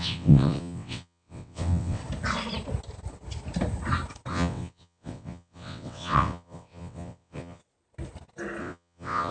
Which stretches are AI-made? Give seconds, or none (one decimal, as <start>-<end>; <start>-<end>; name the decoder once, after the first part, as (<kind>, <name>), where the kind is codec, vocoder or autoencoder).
0.0-2.0 (vocoder, WaveNeXt); 4.3-7.6; 8.6-9.3